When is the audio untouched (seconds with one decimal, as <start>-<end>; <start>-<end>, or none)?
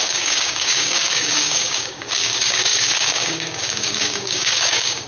none